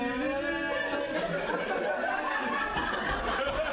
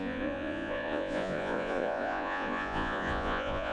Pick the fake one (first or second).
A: second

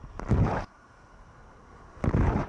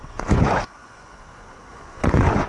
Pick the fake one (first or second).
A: second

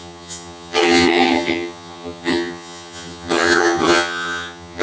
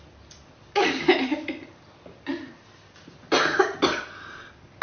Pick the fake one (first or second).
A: first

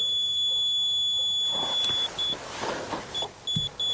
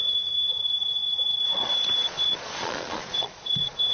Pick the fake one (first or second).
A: second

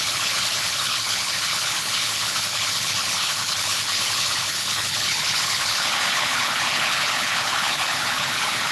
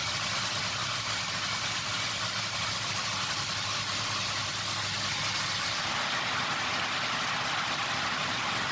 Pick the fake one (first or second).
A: first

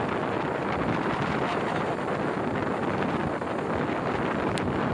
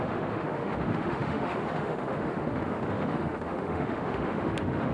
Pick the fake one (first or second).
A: second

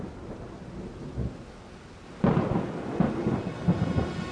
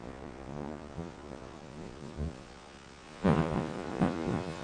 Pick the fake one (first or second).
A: second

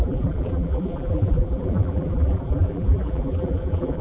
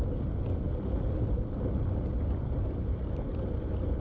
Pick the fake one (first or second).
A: first